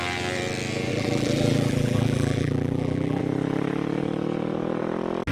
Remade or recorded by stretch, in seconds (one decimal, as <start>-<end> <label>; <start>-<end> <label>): 0.0-0.9 recorded; 0.9-3.2 remade; 3.2-5.3 recorded